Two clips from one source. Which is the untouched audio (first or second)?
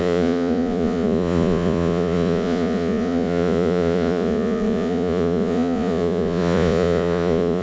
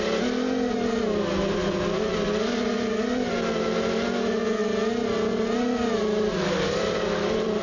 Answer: second